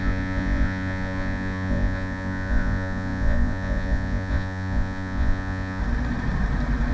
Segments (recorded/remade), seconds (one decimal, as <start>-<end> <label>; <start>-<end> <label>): 0.0-5.8 remade; 5.8-6.9 recorded